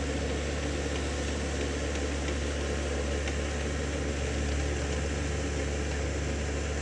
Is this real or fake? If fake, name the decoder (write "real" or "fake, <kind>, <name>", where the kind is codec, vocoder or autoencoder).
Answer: real